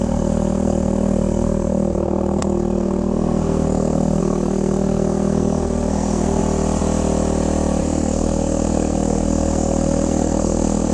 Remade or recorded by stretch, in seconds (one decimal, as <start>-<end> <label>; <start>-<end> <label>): 0.0-6.4 remade; 6.4-7.8 recorded; 7.8-10.9 remade